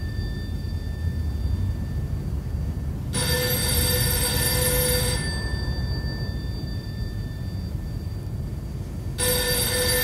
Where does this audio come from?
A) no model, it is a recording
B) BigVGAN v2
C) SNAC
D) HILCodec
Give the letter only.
A